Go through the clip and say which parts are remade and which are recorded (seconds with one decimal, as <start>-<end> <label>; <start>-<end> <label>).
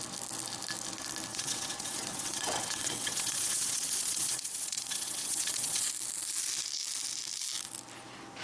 0.0-1.3 recorded; 1.3-5.9 remade; 5.9-8.4 recorded